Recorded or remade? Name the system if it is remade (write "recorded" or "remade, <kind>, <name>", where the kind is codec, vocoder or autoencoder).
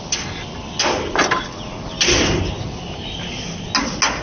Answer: recorded